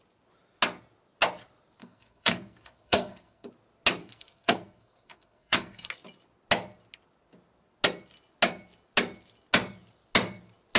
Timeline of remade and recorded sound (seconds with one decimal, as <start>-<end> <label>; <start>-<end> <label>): 0.0-1.8 recorded; 1.8-3.5 remade; 3.5-4.0 recorded; 4.0-5.9 remade; 5.9-10.8 recorded